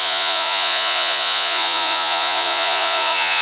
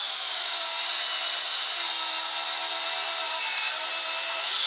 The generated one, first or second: first